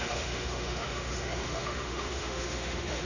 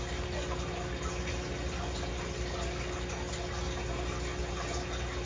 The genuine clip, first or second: second